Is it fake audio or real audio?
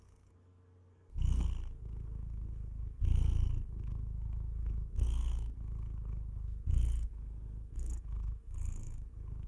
fake